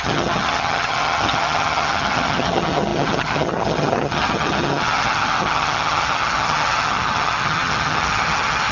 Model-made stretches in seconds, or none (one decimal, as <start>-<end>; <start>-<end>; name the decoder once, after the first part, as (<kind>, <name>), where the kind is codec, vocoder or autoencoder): 0.0-8.7 (vocoder, HiFi-GAN)